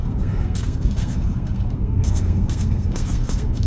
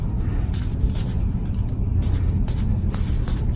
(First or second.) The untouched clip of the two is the second